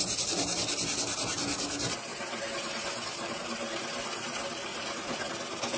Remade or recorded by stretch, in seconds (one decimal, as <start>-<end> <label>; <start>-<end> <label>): 0.0-4.7 recorded; 4.7-5.3 remade; 5.3-5.8 recorded